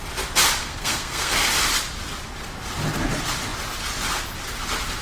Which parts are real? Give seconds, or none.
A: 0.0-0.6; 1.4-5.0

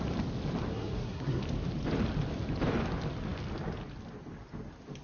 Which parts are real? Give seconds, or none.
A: 0.0-0.7; 1.4-5.0

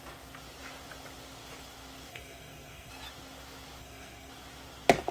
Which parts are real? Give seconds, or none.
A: 0.0-2.1; 2.9-3.8; 4.3-5.1

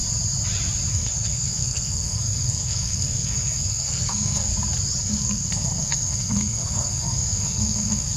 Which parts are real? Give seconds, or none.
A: 0.0-0.9; 4.5-5.0